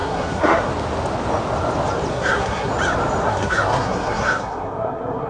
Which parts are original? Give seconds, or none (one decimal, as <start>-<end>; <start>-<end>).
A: 0.7-2.1; 2.7-3.2